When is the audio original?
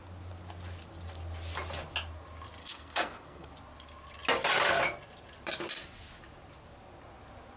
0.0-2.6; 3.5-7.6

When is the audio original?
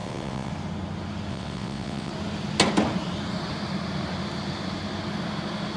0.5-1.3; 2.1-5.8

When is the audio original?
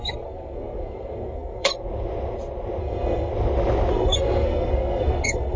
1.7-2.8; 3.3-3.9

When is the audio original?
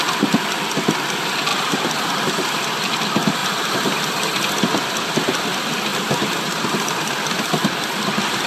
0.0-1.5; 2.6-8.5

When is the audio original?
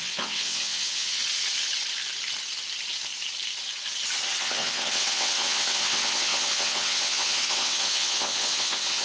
1.2-4.4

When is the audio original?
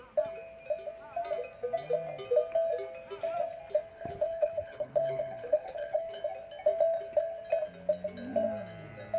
0.0-3.9; 6.2-9.2